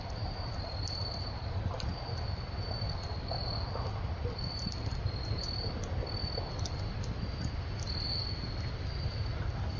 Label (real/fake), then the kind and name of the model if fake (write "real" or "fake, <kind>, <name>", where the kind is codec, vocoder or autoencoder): real